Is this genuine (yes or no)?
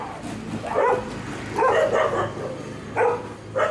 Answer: yes